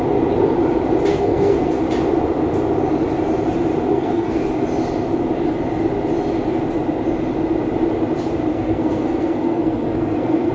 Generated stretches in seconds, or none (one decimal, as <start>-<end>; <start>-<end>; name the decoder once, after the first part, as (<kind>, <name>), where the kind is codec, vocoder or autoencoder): 1.1-1.8 (codec, SNAC); 3.9-4.4; 8.5-10.5